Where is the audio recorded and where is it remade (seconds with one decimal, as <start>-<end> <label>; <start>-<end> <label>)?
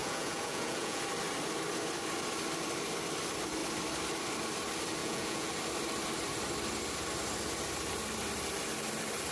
0.0-1.0 remade; 1.0-5.0 recorded; 5.0-5.5 remade; 5.5-9.3 recorded